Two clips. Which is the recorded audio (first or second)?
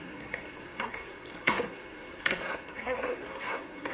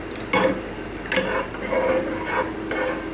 second